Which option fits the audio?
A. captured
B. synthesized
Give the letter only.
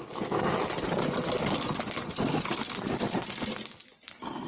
A